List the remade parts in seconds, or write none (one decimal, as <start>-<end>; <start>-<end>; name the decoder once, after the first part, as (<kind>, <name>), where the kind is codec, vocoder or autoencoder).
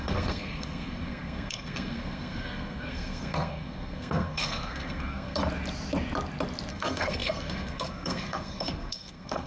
0.0-5.4 (codec, SNAC); 6.7-9.5